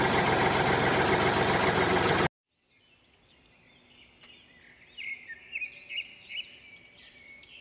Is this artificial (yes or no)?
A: no